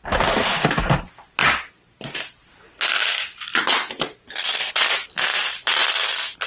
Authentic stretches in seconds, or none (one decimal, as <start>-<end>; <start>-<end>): 0.0-2.4; 3.2-6.5